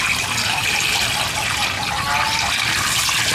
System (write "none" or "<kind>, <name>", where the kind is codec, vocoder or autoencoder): none